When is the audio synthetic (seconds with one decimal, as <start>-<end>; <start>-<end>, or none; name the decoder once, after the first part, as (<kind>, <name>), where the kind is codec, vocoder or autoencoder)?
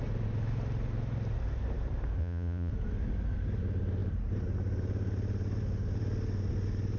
2.2-2.7 (vocoder, Vocos)